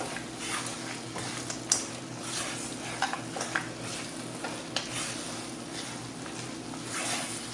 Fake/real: real